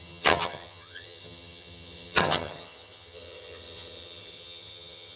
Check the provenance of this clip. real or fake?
fake